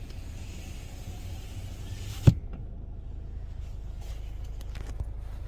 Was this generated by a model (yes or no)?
no